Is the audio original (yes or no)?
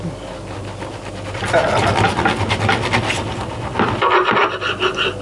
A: yes